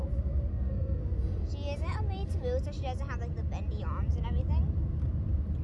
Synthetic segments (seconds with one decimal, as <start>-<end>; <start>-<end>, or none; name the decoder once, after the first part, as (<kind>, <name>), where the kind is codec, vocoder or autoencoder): 0.5-1.0 (codec, SNAC)

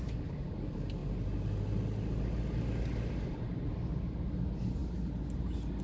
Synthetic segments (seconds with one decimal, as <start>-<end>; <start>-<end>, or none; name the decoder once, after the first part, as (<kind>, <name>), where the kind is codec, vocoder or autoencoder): none